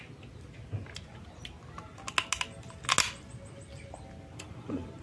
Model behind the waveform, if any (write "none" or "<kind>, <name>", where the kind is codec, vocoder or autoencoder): none